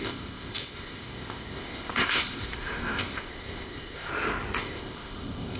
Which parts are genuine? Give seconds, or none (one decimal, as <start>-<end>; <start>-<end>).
4.1-4.6